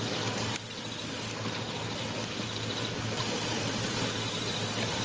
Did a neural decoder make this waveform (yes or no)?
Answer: no